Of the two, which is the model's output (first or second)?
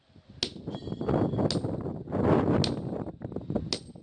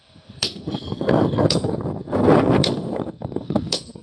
second